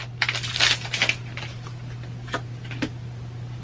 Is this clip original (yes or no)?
yes